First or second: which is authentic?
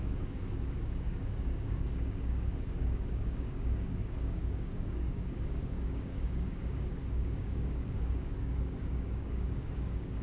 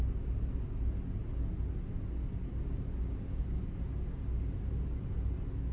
second